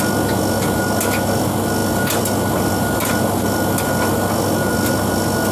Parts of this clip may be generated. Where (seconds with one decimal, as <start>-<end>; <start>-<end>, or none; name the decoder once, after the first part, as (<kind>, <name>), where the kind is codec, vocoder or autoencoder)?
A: none